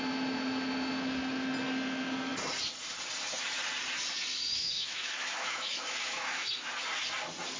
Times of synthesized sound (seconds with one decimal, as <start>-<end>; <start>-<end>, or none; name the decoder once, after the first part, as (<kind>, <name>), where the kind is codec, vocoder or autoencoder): 4.6-6.7 (autoencoder, DAC-VAE)